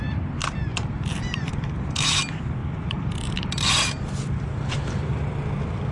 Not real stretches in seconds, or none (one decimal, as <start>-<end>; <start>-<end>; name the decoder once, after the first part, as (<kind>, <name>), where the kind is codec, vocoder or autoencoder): 0.7-2.2 (vocoder, BigVGAN v2); 2.6-5.3